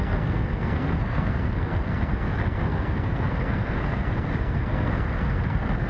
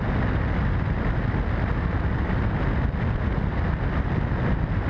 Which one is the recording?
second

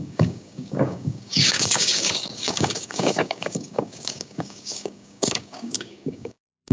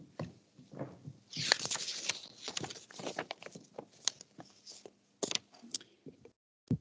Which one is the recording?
second